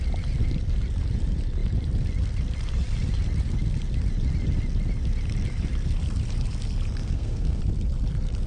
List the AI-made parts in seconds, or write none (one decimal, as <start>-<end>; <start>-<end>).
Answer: 7.0-7.6